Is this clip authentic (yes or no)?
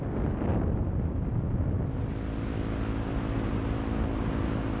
yes